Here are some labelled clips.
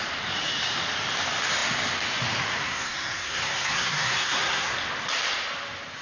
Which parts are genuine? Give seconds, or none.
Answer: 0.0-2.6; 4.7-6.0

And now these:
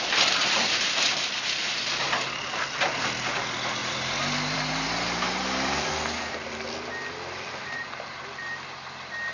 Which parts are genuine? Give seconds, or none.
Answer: 0.0-3.8; 5.9-7.6; 8.2-9.3